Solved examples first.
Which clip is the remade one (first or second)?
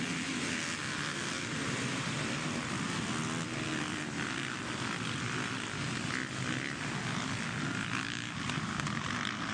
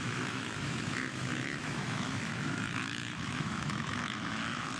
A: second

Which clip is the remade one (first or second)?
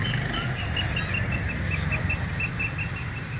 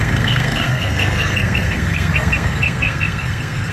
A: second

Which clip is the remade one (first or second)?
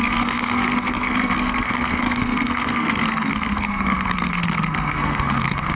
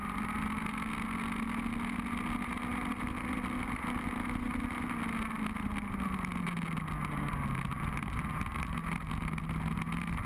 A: first